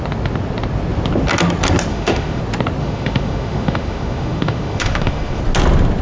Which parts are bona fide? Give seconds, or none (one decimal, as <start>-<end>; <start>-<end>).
0.0-1.9; 2.4-2.8; 5.4-6.0

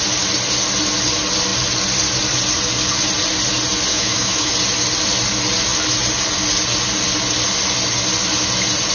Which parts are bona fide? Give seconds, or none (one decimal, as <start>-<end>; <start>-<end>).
0.0-3.9; 4.5-8.9

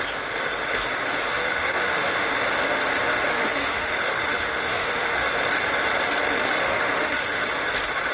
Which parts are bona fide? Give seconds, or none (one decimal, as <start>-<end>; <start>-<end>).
0.0-1.3; 2.3-3.2; 5.3-6.3; 7.4-8.1

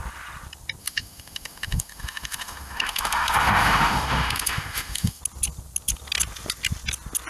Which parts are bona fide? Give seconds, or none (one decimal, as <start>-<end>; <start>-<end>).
0.0-0.8; 5.2-7.3

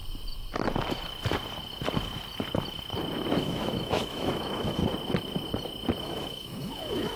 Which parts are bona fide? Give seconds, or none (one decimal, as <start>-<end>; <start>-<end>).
0.0-3.4; 4.8-6.0

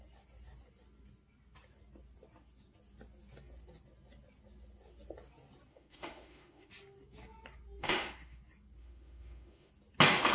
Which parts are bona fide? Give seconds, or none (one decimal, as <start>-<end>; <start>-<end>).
0.0-5.7; 6.7-7.8; 8.4-8.8; 9.7-10.3

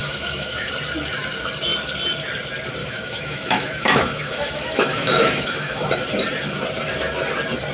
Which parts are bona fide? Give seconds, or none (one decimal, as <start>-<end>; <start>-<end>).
0.7-2.8; 5.9-7.7